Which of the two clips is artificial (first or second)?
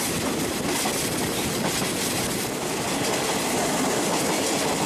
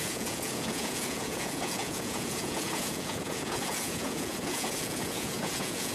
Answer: second